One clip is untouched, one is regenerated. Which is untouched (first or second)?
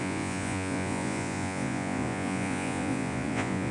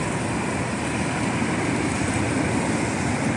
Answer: second